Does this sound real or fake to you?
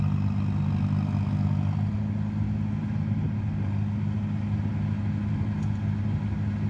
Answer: real